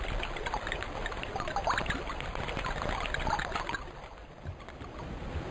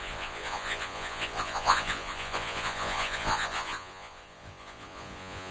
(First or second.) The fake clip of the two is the second